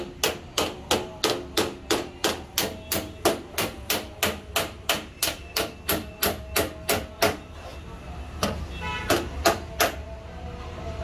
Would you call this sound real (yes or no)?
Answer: yes